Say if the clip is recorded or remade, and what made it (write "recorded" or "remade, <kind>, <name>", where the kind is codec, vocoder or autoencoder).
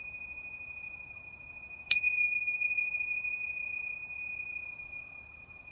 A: recorded